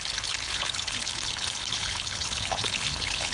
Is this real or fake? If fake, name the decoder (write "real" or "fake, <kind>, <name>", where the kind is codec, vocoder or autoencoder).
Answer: fake, codec, HILCodec